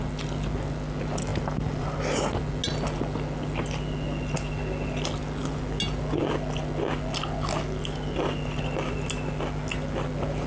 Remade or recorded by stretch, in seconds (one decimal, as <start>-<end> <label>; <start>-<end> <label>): 0.0-10.5 recorded